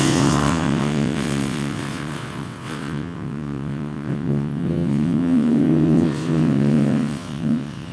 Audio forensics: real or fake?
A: fake